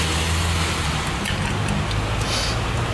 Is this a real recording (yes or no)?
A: yes